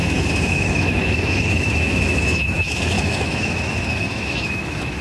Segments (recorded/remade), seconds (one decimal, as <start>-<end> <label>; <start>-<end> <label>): 0.0-5.0 remade